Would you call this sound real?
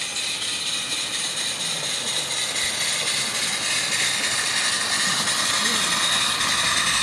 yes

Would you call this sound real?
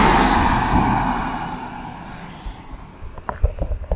yes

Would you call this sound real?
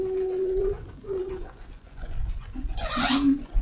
no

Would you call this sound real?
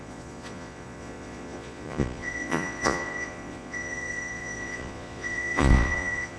no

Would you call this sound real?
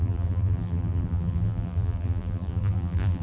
no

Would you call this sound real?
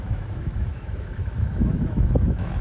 no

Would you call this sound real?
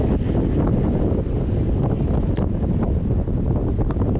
yes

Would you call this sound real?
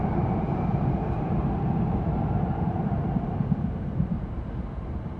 no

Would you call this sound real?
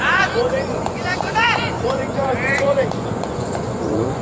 no